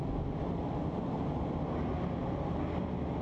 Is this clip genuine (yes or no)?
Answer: yes